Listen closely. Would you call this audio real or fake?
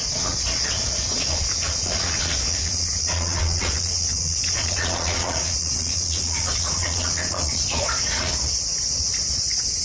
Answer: fake